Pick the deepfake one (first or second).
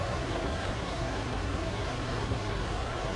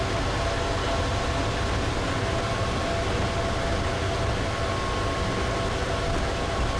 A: first